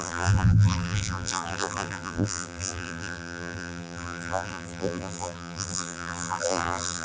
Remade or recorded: remade